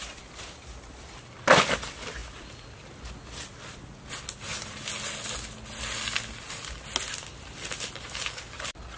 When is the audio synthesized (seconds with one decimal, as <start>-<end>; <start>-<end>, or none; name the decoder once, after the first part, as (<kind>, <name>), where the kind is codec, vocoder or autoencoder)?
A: none